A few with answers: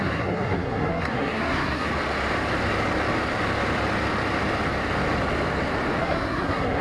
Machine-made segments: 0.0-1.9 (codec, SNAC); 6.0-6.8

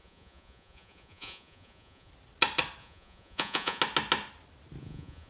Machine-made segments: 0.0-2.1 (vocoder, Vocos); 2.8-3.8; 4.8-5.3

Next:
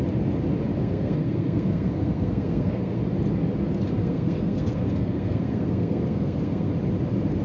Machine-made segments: 0.8-3.0 (codec, SNAC); 4.0-6.7

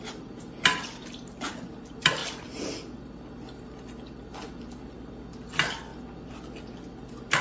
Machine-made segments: none